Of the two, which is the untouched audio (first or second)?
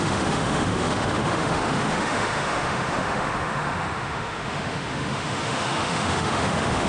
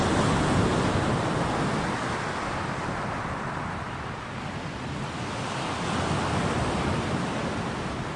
second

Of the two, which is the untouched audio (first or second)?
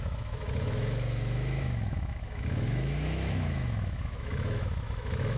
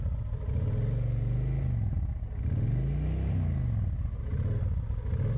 second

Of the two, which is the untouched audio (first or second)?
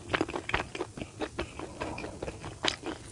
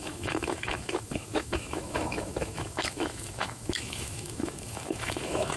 first